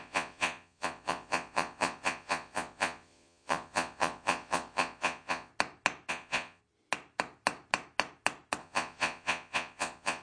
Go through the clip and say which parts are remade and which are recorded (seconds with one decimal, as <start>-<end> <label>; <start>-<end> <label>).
0.0-5.5 remade; 5.5-6.1 recorded; 6.1-6.6 remade; 6.6-8.6 recorded; 8.6-10.2 remade